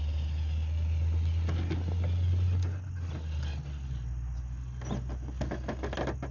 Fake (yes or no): no